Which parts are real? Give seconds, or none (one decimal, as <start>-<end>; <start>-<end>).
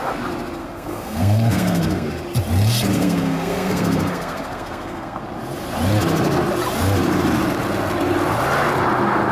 0.0-0.6; 2.1-2.9; 5.2-9.3